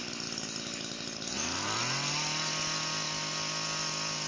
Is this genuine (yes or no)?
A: yes